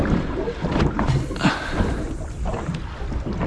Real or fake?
real